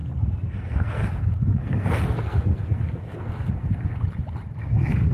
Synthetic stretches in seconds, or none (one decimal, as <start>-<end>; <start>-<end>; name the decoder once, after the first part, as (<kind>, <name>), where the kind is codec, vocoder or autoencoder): 0.0-4.0 (codec, SNAC); 4.6-5.1